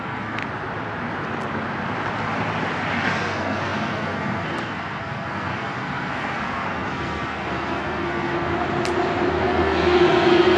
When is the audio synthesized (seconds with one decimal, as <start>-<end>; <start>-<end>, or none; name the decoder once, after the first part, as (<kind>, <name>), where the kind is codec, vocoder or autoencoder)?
0.0-0.4 (codec, SNAC); 2.9-8.5; 9.3-10.6